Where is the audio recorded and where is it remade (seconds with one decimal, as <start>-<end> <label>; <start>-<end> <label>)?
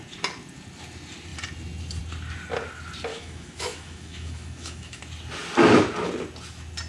0.0-3.1 recorded; 3.1-5.0 remade; 5.0-6.9 recorded